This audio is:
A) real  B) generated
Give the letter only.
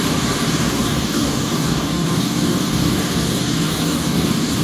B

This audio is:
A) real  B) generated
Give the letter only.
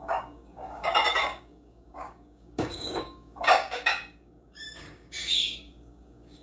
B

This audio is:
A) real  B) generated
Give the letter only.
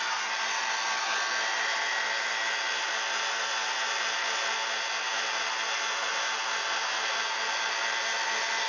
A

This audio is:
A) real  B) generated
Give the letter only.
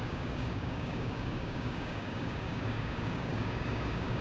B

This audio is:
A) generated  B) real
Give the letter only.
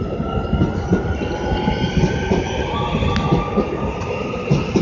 B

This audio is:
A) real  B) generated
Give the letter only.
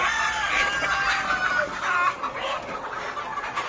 A